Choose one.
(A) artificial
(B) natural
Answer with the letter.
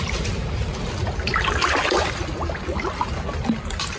B